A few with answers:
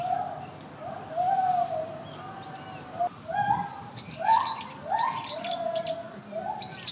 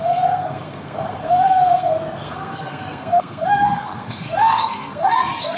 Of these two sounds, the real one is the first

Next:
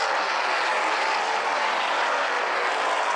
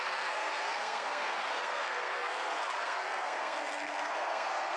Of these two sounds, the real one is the first